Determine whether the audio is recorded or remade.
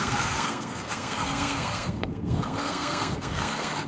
remade